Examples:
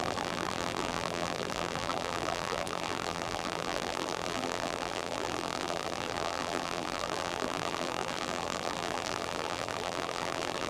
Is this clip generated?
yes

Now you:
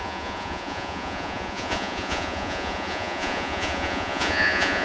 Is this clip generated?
yes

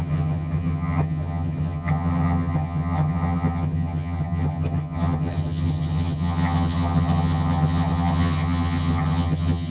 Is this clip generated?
yes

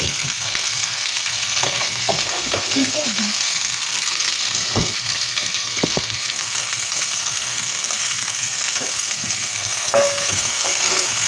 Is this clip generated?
yes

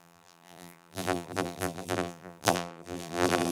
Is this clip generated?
yes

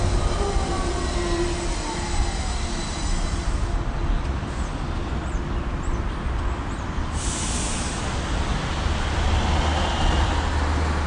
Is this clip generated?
no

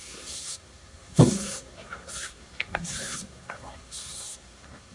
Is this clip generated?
yes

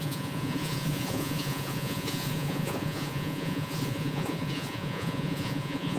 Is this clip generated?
yes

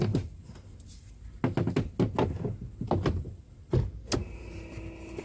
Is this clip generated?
no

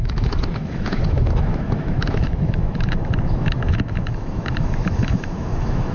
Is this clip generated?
yes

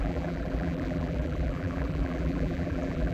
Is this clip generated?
yes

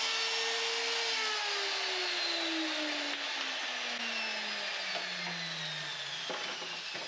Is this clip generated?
no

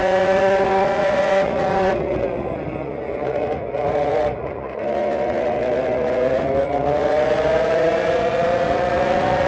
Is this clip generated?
yes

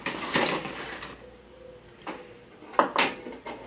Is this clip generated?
no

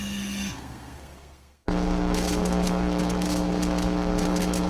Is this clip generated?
yes